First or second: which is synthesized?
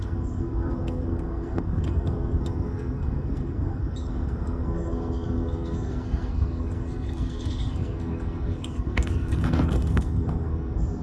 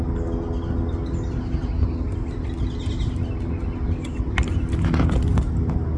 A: first